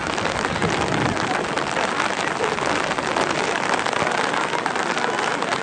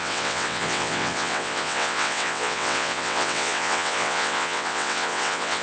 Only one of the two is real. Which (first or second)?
first